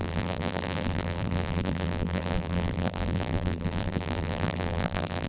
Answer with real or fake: fake